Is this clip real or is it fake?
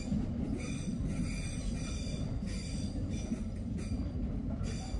real